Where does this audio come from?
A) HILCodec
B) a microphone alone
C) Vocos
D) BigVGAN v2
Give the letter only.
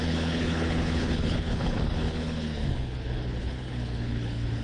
A